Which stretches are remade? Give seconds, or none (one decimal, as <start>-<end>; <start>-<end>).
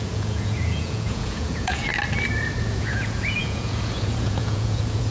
0.0-1.9; 2.7-5.1